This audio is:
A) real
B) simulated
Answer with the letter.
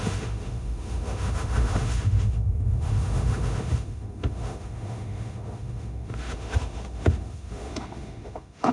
B